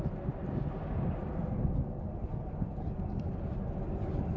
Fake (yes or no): no